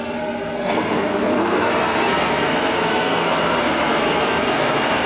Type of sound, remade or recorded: remade